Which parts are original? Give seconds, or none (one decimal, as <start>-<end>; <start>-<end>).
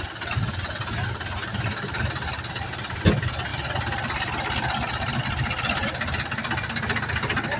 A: 0.0-1.5; 2.1-7.6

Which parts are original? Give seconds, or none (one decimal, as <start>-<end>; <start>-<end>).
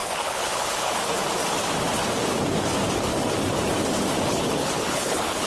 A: 1.0-4.3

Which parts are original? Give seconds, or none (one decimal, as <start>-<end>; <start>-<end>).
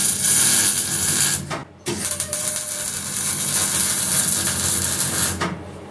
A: 0.0-5.9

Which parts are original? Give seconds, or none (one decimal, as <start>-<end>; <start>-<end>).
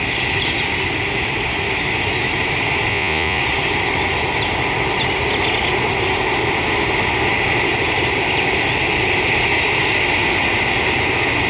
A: 0.0-2.9; 3.4-11.5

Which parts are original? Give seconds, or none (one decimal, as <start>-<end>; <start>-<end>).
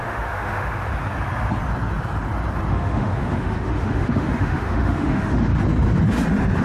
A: 0.9-2.7; 5.5-6.6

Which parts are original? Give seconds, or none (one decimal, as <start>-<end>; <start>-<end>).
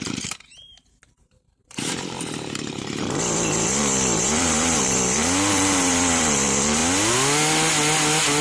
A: 6.8-8.4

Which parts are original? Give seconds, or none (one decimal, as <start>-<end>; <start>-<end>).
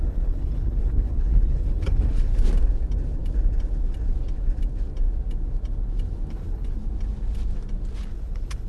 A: 2.3-6.3; 6.8-8.1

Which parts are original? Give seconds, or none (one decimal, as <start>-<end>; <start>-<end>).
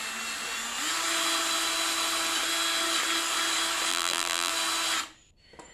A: 0.0-3.9; 4.5-5.7